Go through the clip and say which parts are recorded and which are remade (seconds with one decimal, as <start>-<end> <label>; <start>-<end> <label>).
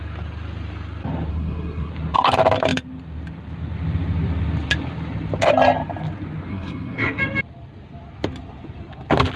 0.0-1.3 recorded; 1.3-1.9 remade; 1.9-6.5 recorded; 6.5-7.2 remade; 7.2-9.4 recorded